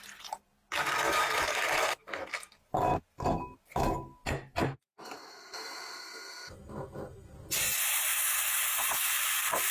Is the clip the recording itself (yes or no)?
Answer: yes